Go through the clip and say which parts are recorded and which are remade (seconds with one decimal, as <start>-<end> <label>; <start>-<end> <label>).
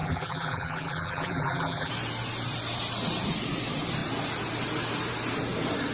0.0-1.9 remade; 1.9-5.9 recorded